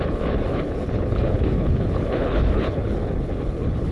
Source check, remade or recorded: remade